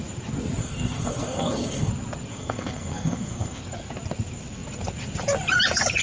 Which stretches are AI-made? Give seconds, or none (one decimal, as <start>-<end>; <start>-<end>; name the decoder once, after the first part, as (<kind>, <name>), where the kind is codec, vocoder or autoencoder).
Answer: 0.6-1.9 (codec, SNAC); 2.3-3.6